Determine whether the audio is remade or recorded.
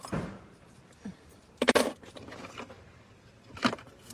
remade